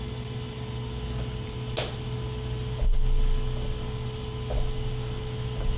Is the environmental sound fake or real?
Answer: real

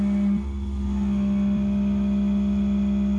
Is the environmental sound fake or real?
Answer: real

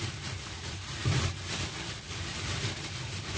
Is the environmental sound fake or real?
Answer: fake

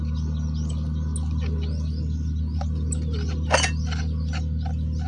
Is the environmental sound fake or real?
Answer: real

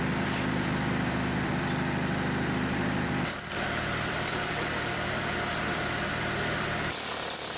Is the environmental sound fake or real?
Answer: fake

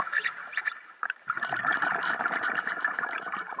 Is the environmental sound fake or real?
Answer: fake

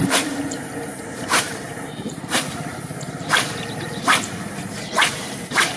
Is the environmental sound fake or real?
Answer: fake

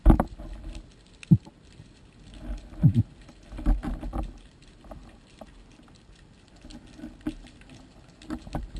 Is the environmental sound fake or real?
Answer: real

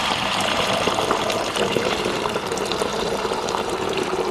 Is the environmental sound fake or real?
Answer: fake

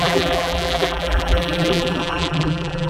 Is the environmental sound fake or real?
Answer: fake